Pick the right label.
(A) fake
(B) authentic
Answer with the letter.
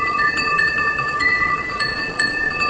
A